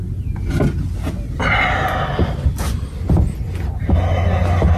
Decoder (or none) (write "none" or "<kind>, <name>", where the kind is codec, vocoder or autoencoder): none